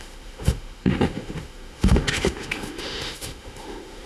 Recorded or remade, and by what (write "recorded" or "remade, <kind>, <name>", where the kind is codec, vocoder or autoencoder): remade, autoencoder, DAC-VAE